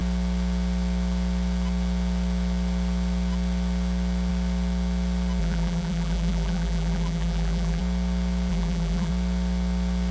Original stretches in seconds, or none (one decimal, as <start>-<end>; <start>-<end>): 0.0-5.4; 7.8-8.5; 9.1-10.1